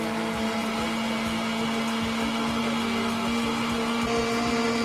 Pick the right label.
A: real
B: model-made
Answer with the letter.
A